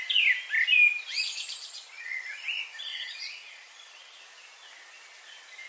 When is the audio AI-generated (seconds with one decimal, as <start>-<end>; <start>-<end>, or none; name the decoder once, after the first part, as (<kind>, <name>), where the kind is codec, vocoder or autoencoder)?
1.6-2.2 (vocoder, Vocos); 2.9-4.2